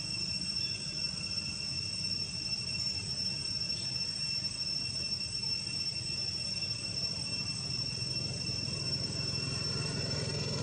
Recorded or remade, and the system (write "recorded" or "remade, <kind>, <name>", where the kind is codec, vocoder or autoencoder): recorded